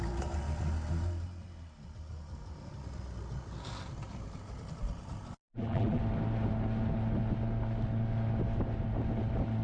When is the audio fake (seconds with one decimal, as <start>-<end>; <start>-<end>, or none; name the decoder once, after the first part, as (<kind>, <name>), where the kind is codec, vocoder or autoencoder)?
5.4-6.0 (vocoder, BigVGAN v2)